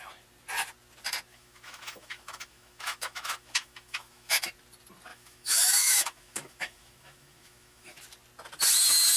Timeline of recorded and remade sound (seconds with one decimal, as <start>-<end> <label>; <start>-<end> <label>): 0.0-1.3 recorded; 1.3-4.5 remade; 4.5-5.1 recorded; 5.1-8.0 remade; 8.0-9.2 recorded